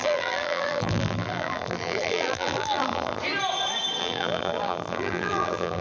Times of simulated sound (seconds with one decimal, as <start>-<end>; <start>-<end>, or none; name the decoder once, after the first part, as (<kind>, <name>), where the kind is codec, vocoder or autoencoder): 0.0-3.2 (vocoder, BigVGAN v2); 4.0-5.8